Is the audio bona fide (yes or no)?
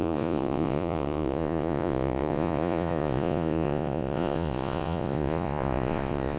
no